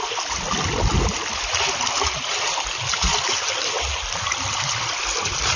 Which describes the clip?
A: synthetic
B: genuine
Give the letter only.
B